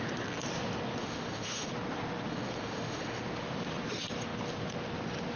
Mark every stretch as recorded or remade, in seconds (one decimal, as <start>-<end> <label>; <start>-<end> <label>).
0.0-1.0 recorded; 1.0-1.7 remade; 1.7-2.3 recorded; 2.3-3.2 remade; 3.2-5.4 recorded